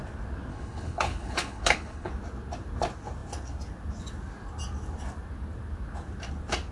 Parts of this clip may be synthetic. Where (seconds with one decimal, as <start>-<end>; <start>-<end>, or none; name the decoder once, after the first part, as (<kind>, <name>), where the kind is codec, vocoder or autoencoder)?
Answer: 0.5-2.1 (codec, HILCodec)